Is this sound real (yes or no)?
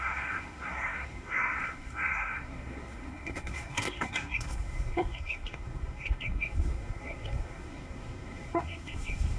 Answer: no